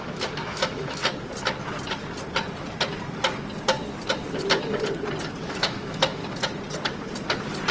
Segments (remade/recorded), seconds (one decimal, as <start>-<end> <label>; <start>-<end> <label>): 0.0-1.0 remade; 1.0-5.4 recorded; 5.4-6.2 remade; 6.2-7.7 recorded